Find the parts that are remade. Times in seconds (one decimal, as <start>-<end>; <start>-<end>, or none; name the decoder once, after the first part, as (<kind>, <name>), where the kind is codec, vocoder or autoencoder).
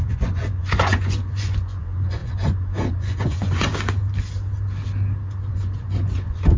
0.0-3.7 (vocoder, Vocos); 5.5-6.6